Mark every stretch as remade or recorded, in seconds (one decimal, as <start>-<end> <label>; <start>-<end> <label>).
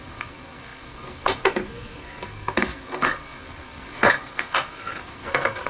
0.0-5.7 remade